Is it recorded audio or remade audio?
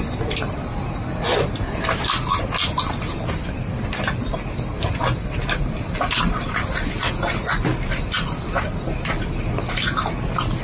recorded